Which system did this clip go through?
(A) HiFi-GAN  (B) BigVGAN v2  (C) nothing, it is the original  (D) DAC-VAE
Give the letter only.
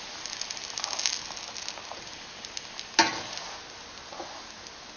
C